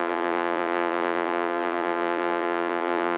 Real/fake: fake